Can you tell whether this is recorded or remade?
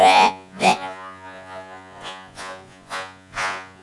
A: remade